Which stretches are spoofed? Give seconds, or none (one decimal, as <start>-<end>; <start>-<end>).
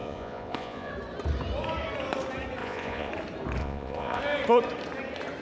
0.0-0.9; 2.6-3.1; 3.6-4.2